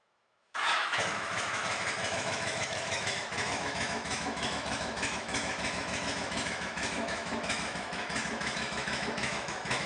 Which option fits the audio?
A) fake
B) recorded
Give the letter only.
A